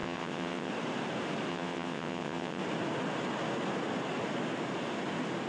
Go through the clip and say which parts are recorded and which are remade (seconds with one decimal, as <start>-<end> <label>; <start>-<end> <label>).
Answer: 0.0-0.7 remade; 0.7-1.5 recorded; 1.5-2.6 remade; 2.6-5.5 recorded